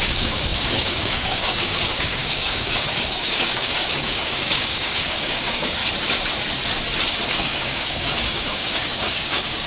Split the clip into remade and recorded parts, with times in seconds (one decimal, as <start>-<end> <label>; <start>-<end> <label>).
0.0-5.8 remade; 5.8-7.3 recorded; 7.3-9.7 remade